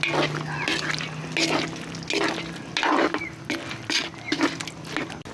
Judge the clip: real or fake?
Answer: real